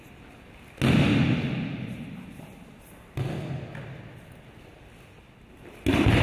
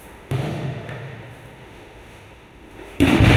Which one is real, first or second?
first